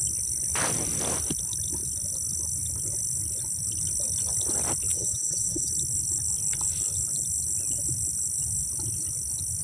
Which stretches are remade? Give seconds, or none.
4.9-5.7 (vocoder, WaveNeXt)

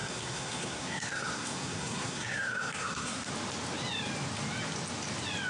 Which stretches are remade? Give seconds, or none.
0.0-3.3 (codec, SNAC)

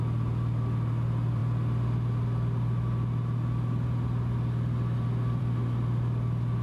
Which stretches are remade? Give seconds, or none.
none